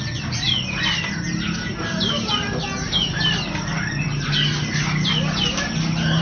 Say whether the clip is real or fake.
real